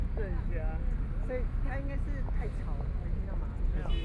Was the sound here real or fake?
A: real